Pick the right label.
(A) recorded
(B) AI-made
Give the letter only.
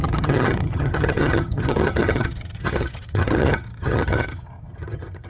B